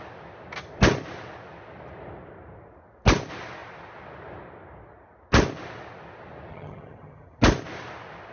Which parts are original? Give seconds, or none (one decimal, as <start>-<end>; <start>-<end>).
0.0-6.5; 7.4-8.3